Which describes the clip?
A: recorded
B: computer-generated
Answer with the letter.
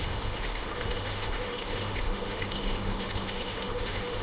B